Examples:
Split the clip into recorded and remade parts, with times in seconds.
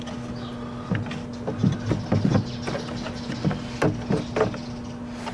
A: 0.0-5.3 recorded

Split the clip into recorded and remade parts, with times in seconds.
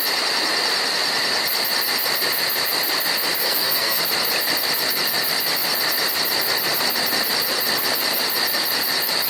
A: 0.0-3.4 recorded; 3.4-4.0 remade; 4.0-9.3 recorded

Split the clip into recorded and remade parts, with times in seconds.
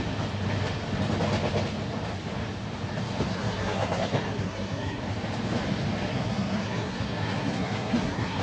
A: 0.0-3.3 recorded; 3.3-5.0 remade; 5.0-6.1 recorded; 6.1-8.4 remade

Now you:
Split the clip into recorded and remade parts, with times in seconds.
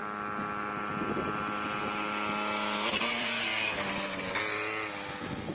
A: 0.0-2.9 recorded; 2.9-3.5 remade; 3.5-5.5 recorded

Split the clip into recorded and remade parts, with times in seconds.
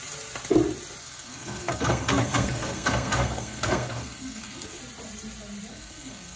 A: 0.0-1.0 recorded; 1.0-4.8 remade; 4.8-5.7 recorded; 5.7-6.4 remade